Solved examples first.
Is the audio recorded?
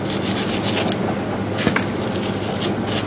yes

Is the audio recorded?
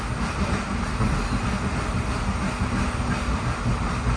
yes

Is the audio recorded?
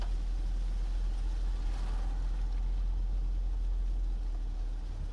yes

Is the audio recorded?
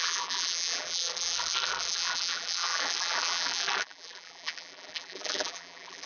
no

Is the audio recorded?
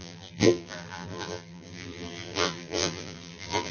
no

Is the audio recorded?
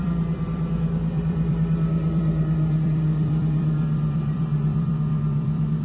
no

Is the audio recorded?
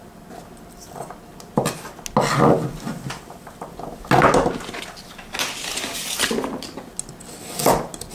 yes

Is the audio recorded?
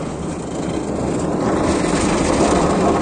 yes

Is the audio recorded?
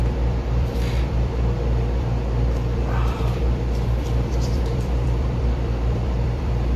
no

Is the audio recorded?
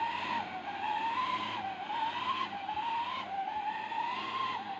no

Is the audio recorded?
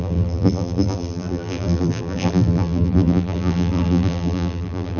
no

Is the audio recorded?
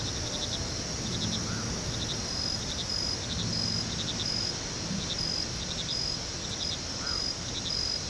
yes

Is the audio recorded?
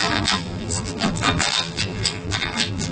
no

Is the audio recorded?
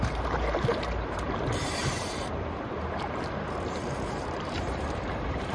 no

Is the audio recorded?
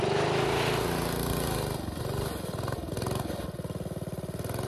yes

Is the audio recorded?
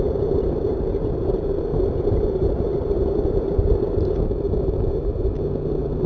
no